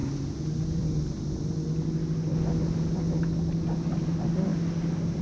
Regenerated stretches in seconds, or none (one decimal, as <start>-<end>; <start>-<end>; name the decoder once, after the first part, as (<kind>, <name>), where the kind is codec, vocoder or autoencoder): none